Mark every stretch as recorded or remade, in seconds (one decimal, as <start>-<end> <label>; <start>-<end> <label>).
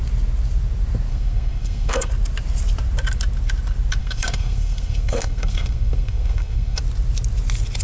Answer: 0.0-1.1 recorded; 1.1-2.1 remade; 2.1-4.0 recorded; 4.0-6.8 remade; 6.8-7.8 recorded